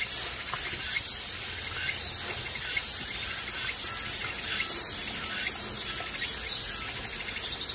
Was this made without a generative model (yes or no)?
yes